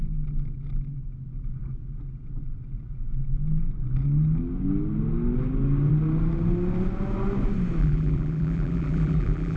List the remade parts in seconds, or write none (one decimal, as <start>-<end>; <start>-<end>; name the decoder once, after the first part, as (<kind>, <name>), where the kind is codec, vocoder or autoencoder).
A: 7.8-9.6 (vocoder, BigVGAN v2)